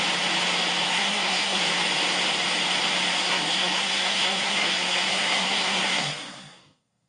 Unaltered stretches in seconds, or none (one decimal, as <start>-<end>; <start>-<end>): 0.0-0.9; 1.6-3.1